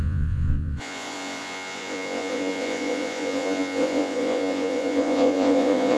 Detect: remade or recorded remade